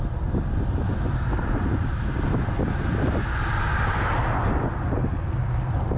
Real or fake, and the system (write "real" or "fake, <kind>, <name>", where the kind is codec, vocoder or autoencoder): real